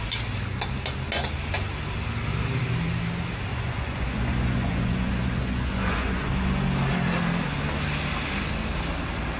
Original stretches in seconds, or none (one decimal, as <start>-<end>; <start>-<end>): 0.0-3.5; 6.3-9.4